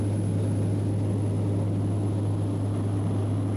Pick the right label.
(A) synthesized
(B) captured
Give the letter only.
B